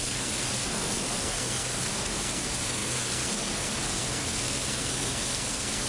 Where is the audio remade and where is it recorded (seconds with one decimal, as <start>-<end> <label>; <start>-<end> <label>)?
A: 0.0-5.9 remade